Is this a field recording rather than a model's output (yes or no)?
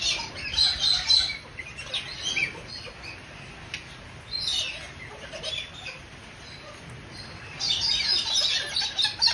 yes